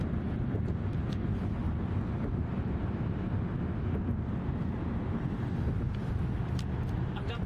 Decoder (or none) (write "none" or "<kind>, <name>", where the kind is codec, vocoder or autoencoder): none